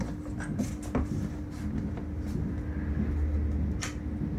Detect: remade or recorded recorded